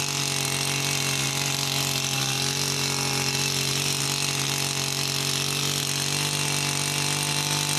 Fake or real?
real